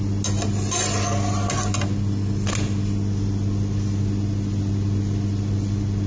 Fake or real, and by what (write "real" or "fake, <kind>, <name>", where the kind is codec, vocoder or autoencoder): real